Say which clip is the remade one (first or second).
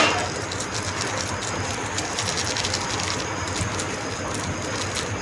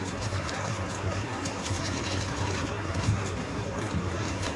second